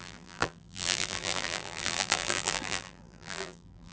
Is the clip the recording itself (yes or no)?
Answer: no